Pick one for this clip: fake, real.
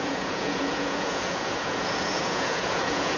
fake